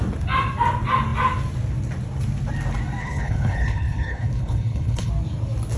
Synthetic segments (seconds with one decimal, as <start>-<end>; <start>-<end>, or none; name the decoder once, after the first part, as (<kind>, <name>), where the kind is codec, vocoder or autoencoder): 3.0-5.1 (codec, HILCodec)